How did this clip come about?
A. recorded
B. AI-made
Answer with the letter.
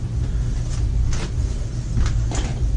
A